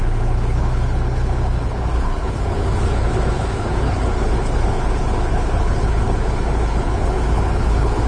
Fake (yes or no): yes